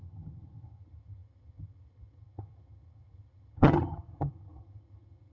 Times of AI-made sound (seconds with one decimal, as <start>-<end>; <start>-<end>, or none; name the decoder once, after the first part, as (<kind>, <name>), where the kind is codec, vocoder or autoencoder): 0.0-5.3 (vocoder, HiFi-GAN)